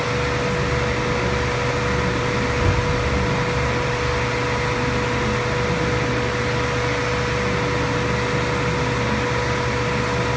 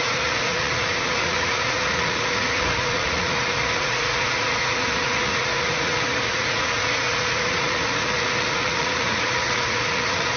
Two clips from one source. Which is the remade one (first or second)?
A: second